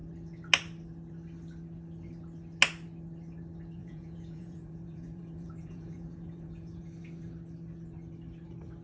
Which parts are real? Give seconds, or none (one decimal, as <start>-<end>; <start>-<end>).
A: 0.0-3.8; 6.8-8.8